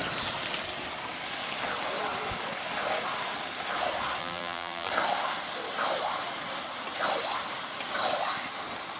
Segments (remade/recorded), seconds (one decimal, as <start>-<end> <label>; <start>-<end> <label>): 0.0-4.2 recorded; 4.2-4.9 remade; 4.9-9.0 recorded